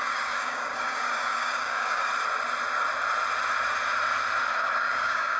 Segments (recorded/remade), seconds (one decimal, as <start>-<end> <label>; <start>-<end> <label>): 0.0-2.1 remade; 2.1-4.8 recorded; 4.8-5.4 remade